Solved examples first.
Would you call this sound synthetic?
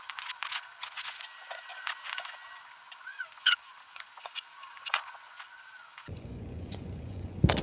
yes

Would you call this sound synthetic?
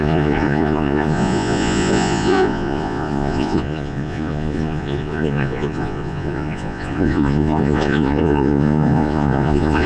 yes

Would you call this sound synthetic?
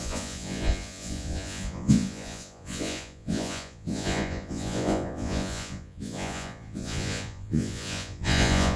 yes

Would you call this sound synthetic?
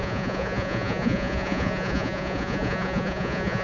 yes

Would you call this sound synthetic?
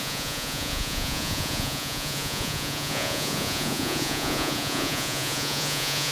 yes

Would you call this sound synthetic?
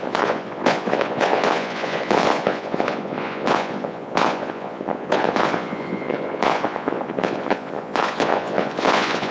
yes